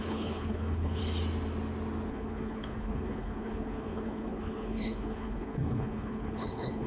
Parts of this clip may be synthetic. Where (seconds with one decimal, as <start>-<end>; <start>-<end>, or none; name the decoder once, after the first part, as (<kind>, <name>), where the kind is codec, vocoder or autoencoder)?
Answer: 0.0-1.0 (codec, HILCodec); 2.1-6.9